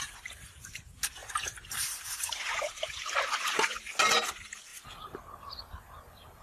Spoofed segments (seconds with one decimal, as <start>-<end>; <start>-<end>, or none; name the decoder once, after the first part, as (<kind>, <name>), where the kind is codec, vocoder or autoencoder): none